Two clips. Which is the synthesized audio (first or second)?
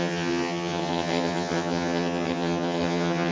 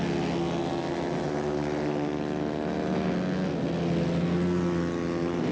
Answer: first